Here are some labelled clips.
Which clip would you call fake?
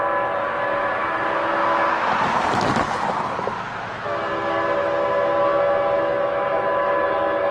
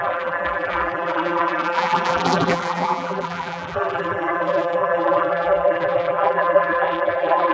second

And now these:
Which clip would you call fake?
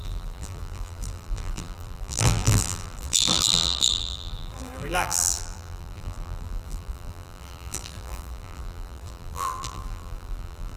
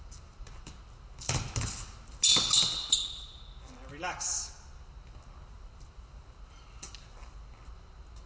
first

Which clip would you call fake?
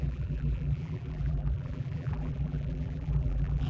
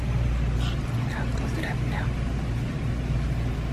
first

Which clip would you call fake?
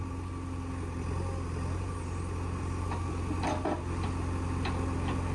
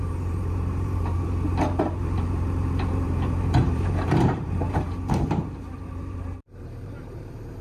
second